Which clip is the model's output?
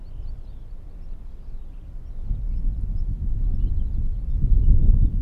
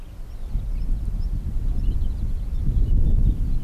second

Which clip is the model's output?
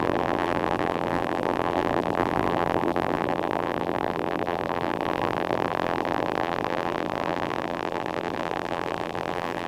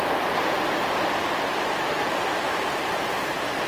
first